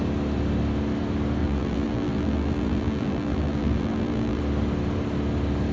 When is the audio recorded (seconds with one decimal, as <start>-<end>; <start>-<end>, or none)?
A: 0.0-1.4; 4.4-5.7